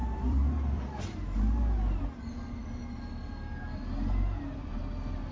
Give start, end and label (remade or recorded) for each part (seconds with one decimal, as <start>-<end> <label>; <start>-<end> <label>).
0.0-1.0 remade; 1.0-2.6 recorded; 2.6-4.8 remade; 4.8-5.3 recorded